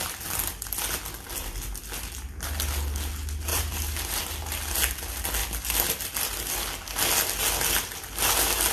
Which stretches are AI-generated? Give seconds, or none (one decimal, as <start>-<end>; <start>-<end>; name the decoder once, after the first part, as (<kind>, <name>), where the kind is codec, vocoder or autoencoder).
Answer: 3.5-4.5 (vocoder, BigVGAN v2)